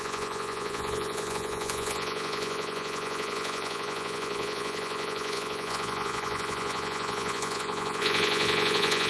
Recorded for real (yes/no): no